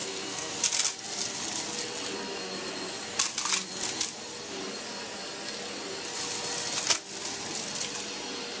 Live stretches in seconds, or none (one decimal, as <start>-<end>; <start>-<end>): 0.5-8.6